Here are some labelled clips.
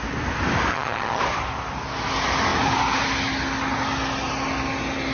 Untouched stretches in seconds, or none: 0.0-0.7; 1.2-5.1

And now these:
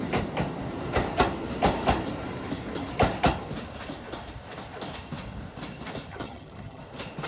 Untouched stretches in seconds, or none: 0.0-6.1; 6.8-7.3

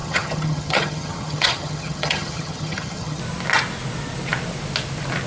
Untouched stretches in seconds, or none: 3.2-5.3

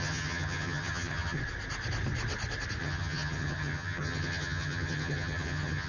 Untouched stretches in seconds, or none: 1.4-2.8

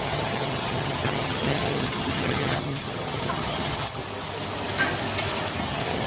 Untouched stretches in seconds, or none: 4.0-5.6

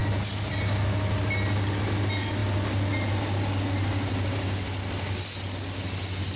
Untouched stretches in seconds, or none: 0.0-6.4

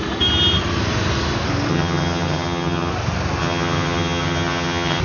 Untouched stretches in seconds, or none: 0.0-1.7; 2.9-3.4